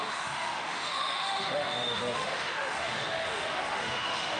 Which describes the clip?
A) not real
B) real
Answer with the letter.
A